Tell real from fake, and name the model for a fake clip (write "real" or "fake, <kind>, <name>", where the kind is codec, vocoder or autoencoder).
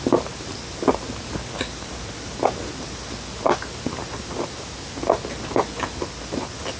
real